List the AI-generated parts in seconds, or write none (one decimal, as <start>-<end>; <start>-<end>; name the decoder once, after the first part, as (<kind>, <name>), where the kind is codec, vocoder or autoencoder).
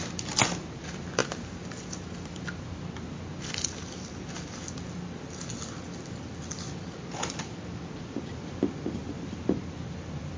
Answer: none